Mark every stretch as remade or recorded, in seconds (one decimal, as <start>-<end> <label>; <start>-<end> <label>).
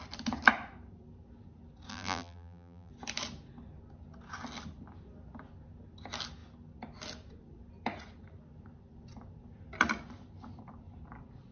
0.0-1.9 recorded; 1.9-2.9 remade; 2.9-11.5 recorded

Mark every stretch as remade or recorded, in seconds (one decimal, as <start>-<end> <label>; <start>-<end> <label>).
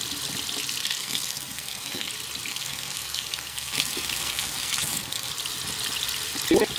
0.0-0.8 recorded; 0.8-2.1 remade; 2.1-2.5 recorded; 2.5-5.3 remade; 5.3-6.8 recorded